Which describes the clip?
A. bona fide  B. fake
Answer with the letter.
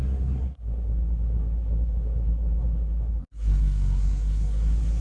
B